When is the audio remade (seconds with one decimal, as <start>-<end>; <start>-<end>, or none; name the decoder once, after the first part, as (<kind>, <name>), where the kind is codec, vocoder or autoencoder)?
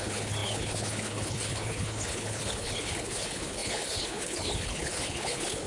0.0-5.7 (codec, HILCodec)